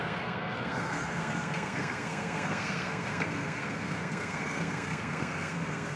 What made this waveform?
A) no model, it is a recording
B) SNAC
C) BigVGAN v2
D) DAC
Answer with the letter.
B